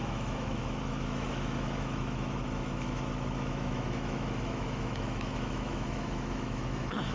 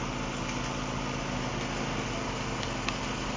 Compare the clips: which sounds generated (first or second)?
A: first